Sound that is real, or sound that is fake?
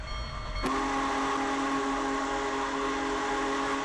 real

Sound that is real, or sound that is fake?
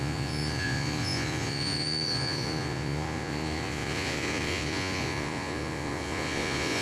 fake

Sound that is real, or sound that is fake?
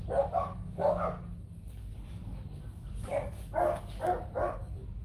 fake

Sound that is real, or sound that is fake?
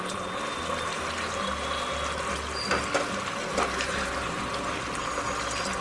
real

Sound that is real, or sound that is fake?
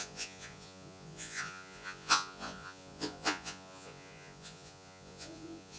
fake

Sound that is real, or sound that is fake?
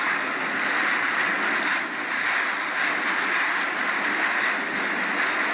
real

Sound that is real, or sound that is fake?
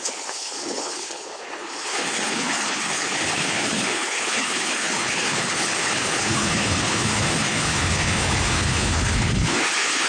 fake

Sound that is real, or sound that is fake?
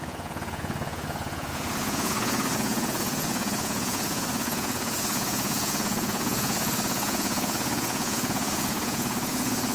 fake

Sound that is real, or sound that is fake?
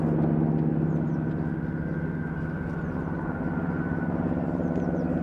real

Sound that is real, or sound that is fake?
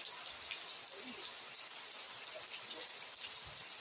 real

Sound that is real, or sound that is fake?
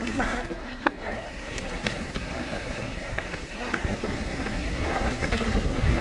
fake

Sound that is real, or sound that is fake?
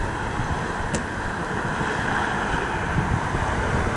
real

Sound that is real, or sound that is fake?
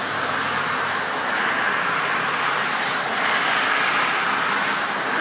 real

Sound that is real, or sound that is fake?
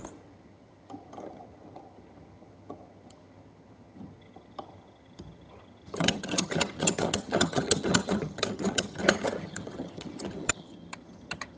fake